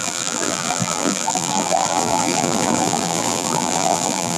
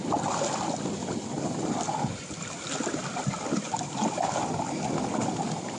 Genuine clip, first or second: second